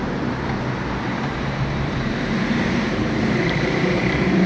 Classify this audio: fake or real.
fake